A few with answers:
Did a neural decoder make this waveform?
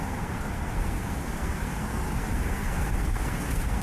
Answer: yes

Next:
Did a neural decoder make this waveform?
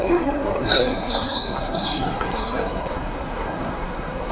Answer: yes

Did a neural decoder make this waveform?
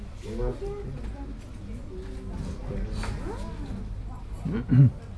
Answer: no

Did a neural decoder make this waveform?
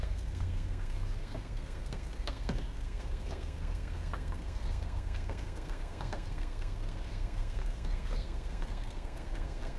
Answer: yes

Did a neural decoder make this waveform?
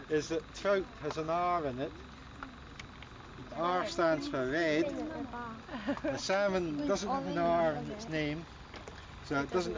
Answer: no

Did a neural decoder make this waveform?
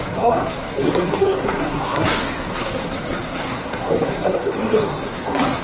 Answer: yes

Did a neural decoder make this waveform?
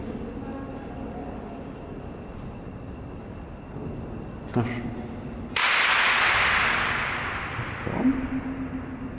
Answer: no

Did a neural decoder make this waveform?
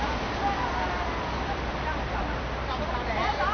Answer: yes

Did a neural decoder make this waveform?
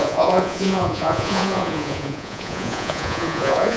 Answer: yes